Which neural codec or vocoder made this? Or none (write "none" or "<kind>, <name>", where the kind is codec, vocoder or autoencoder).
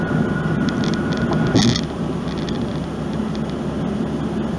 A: none